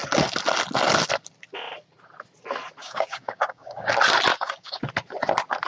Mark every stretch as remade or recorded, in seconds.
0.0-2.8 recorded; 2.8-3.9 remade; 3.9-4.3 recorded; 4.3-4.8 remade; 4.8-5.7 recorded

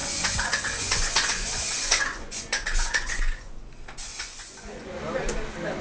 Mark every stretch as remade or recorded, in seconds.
0.0-3.5 remade; 3.5-4.1 recorded; 4.1-5.0 remade; 5.0-5.8 recorded

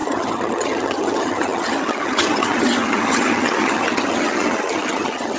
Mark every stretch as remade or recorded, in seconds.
0.0-5.4 remade

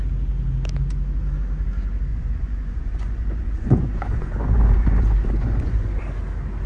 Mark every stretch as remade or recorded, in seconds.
0.0-2.1 recorded; 2.1-6.0 remade; 6.0-6.7 recorded

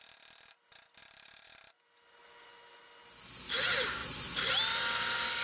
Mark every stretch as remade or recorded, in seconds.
0.0-1.0 recorded; 1.0-1.7 remade; 1.7-4.0 recorded; 4.0-4.5 remade; 4.5-5.4 recorded

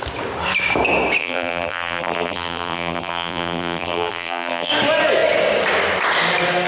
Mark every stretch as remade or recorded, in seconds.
0.0-1.2 recorded; 1.2-4.7 remade; 4.7-6.7 recorded

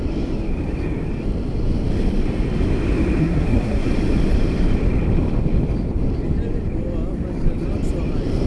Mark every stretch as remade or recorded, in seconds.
0.0-3.2 recorded; 3.2-3.9 remade; 3.9-8.5 recorded